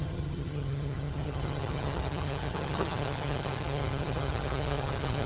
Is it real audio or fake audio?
fake